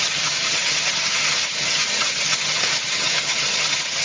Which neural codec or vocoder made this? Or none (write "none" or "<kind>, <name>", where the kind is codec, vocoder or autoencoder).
vocoder, HiFi-GAN